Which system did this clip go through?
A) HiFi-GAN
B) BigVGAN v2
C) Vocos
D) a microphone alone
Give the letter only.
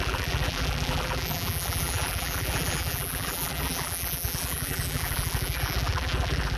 B